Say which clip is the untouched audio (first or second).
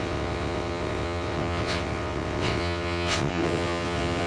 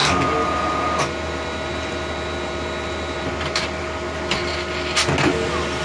second